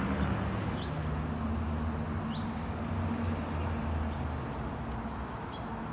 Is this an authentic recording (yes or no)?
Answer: yes